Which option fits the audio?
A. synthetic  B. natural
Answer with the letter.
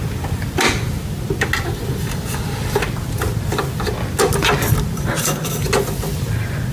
B